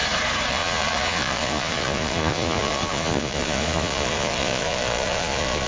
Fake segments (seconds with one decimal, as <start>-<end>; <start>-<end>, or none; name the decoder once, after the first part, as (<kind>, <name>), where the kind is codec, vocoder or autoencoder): 0.5-5.7 (vocoder, Vocos)